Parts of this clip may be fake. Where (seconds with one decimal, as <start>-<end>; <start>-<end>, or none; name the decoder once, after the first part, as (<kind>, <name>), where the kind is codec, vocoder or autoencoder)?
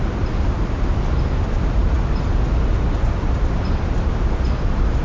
none